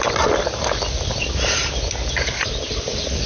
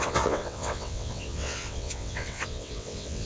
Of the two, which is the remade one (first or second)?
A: second